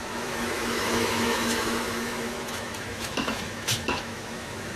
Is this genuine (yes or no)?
no